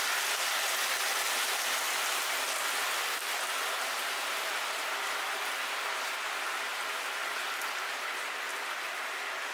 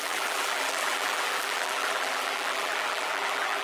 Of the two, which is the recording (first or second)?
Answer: first